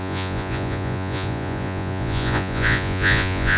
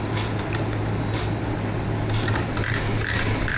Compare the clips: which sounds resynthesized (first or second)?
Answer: first